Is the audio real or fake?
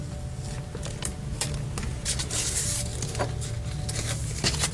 real